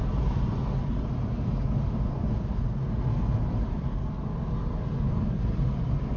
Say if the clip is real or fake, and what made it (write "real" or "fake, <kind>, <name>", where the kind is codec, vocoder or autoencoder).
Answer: real